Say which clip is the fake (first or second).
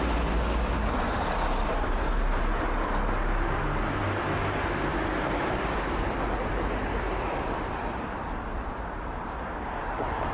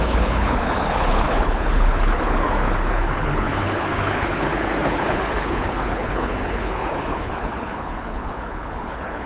second